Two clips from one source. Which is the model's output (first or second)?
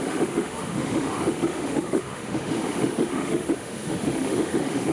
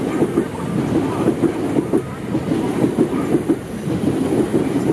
first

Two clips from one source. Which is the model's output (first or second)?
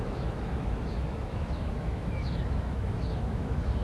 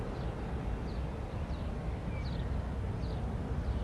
first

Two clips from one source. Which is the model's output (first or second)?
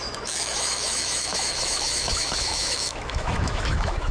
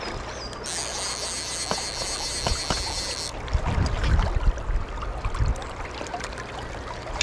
first